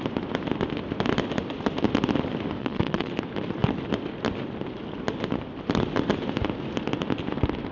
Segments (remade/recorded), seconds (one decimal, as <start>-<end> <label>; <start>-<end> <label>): 0.0-2.6 recorded; 2.6-3.1 remade; 3.1-7.7 recorded